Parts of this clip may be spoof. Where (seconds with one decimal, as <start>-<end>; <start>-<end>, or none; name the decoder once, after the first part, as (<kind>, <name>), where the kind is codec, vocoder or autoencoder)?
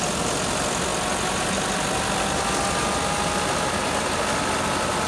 none